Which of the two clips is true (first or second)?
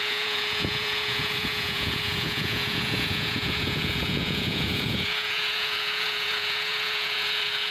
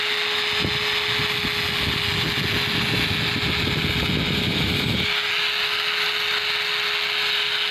second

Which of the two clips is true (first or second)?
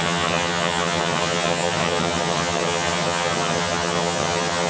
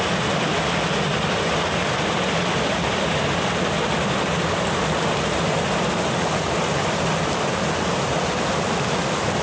second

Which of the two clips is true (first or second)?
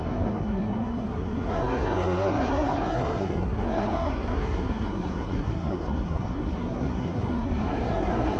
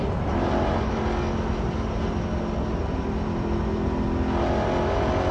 second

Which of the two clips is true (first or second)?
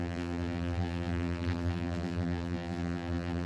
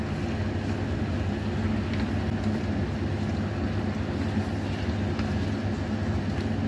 second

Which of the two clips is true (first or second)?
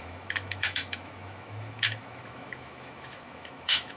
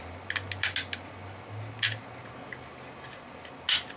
second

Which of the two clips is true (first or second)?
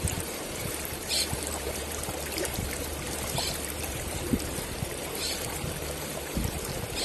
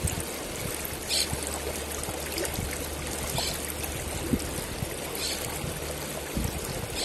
second